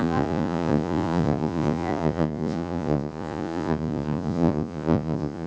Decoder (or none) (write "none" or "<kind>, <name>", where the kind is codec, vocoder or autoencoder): vocoder, Vocos